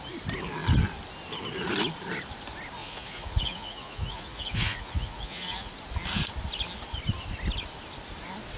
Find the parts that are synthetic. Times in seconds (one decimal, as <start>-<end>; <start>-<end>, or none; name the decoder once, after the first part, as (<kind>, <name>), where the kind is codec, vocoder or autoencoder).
2.8-5.7 (vocoder, Vocos)

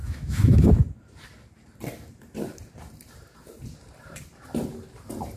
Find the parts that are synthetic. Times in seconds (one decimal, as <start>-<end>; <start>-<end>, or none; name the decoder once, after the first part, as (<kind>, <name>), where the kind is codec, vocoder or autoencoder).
0.0-0.7 (autoencoder, DAC-VAE)